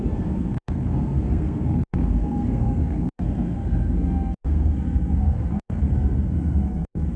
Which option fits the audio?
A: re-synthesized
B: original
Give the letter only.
A